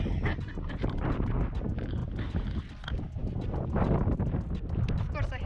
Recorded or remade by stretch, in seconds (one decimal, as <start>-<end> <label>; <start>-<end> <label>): 0.0-5.5 recorded